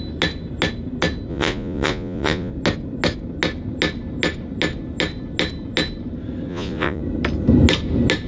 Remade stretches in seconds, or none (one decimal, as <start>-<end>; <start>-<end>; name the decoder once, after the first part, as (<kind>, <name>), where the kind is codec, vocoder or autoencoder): 1.3-2.5 (vocoder, Vocos); 6.5-7.0